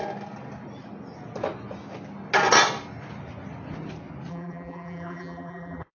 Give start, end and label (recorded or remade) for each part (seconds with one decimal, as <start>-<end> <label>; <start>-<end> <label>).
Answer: 0.0-4.3 recorded; 4.3-5.9 remade